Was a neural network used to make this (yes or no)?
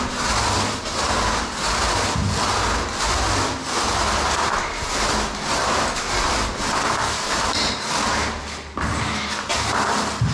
no